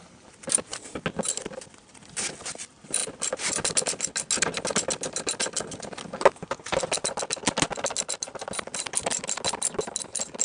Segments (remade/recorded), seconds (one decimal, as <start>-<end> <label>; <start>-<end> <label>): 0.0-10.4 recorded